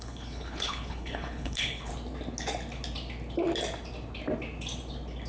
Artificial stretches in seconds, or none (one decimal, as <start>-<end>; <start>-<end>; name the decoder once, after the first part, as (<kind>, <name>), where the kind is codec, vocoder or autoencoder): 0.0-1.9 (codec, HILCodec)